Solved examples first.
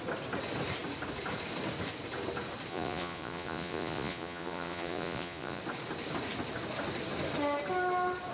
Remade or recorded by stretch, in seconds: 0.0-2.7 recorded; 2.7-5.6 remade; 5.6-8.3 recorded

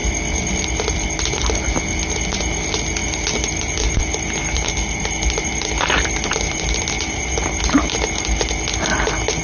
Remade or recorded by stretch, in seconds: 0.0-0.7 remade; 0.7-3.0 recorded; 3.0-7.9 remade; 7.9-9.4 recorded

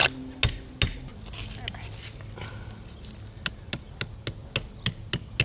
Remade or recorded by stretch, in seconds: 0.0-5.4 recorded

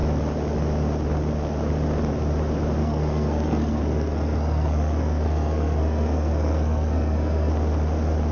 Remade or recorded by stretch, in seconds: 0.0-2.8 recorded; 2.8-7.5 remade; 7.5-8.3 recorded

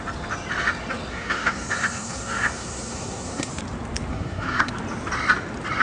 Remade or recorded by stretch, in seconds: 0.0-1.1 recorded; 1.1-3.5 remade; 3.5-4.1 recorded; 4.1-4.7 remade; 4.7-5.8 recorded

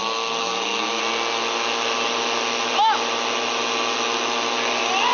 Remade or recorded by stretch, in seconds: 0.0-0.4 recorded; 0.4-1.0 remade; 1.0-5.1 recorded